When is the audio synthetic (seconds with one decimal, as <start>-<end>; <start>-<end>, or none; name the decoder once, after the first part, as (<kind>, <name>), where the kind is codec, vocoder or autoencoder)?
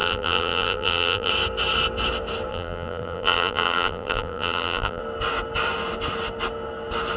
0.0-1.3 (vocoder, BigVGAN v2); 2.5-5.0